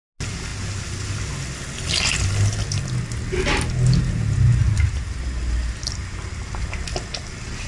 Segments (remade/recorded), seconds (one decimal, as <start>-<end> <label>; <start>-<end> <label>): 0.0-7.7 recorded

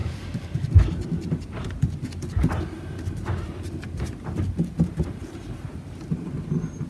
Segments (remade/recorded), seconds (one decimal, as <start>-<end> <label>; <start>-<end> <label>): 0.0-0.7 remade; 0.7-6.9 recorded

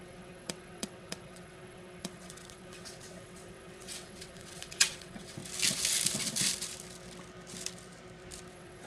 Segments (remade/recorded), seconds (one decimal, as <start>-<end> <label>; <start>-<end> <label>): 0.0-5.4 remade; 5.4-8.5 recorded; 8.5-8.9 remade

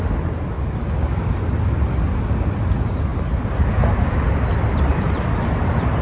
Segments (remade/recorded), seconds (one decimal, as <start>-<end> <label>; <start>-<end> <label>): 0.0-6.0 recorded

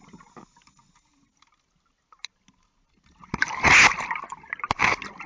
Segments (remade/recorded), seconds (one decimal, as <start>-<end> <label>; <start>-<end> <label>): 0.0-5.3 recorded

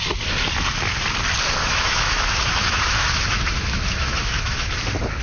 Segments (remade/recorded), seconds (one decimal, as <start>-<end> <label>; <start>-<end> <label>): 0.0-1.6 recorded; 1.6-4.7 remade; 4.7-5.2 recorded

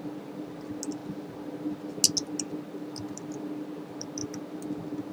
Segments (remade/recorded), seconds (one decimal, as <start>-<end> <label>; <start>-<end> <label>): 0.0-5.1 recorded